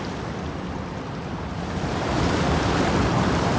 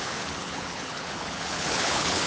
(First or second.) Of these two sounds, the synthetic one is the second